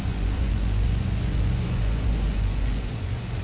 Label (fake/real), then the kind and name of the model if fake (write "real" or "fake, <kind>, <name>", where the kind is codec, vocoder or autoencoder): fake, vocoder, Vocos